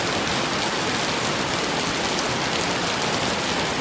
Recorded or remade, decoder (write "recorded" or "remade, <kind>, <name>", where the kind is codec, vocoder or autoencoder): recorded